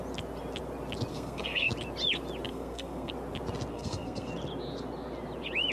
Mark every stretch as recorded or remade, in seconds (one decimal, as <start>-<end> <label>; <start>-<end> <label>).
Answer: 0.0-1.1 recorded; 1.1-1.7 remade; 1.7-2.5 recorded; 2.5-3.1 remade; 3.1-3.7 recorded; 3.7-4.3 remade; 4.3-5.7 recorded